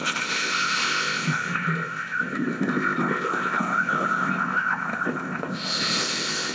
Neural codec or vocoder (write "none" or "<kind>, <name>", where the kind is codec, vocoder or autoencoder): codec, ZipCodec